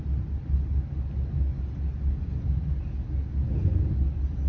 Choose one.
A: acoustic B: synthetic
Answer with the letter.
A